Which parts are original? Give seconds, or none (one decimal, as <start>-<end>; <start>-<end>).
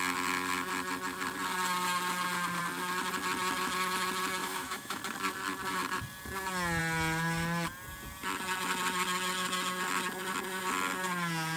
0.0-4.4; 5.0-11.6